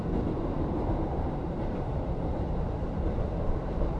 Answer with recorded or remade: remade